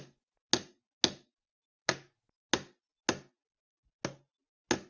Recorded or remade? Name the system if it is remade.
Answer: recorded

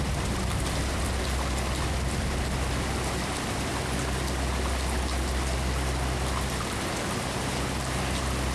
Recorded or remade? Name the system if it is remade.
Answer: recorded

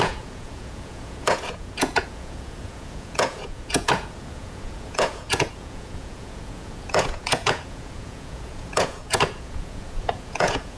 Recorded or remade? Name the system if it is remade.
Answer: remade, vocoder, Vocos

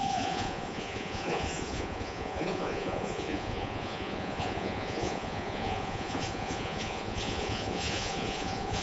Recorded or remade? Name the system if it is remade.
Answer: remade, vocoder, Vocos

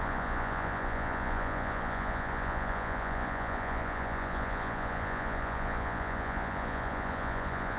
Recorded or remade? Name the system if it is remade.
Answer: remade, vocoder, Vocos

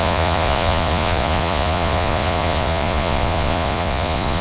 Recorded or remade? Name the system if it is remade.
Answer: remade, vocoder, Vocos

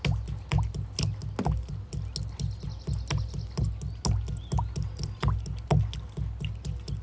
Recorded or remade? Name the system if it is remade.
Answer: recorded